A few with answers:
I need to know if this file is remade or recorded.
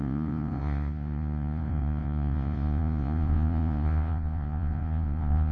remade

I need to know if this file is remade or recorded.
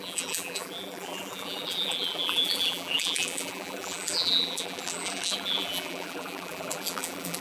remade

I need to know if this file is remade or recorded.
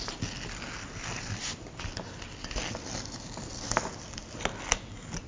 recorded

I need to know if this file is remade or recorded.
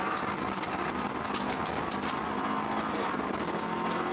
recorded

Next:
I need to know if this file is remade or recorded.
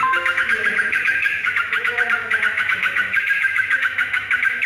remade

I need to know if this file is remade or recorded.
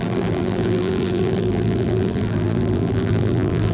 remade